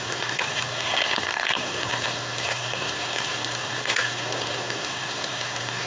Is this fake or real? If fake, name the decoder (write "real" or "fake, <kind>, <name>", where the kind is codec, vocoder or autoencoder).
fake, codec, SNAC